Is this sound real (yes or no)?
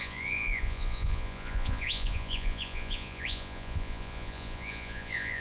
no